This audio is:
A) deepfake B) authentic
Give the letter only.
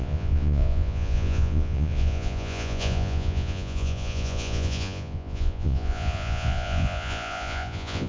A